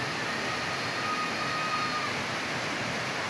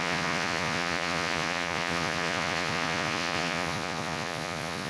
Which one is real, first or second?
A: first